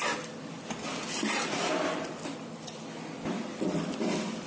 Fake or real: real